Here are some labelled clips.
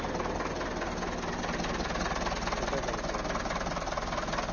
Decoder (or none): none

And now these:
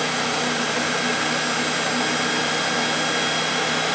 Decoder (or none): none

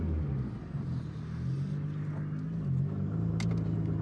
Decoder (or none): none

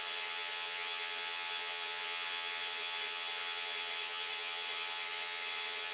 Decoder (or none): vocoder, HiFi-GAN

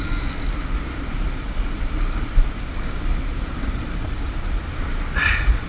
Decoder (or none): none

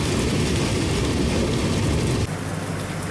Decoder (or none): none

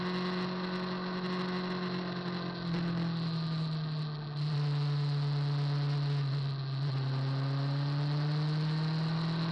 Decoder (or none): none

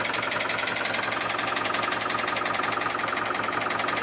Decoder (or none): none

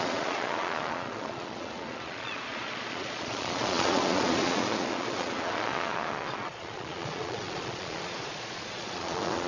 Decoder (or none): vocoder, Vocos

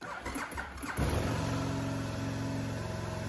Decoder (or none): none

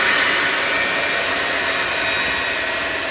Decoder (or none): none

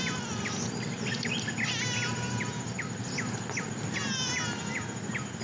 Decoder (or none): none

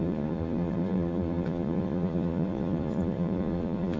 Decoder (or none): vocoder, Vocos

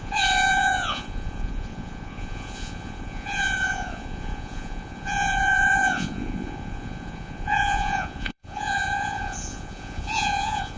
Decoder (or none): vocoder, Vocos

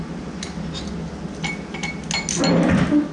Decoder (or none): none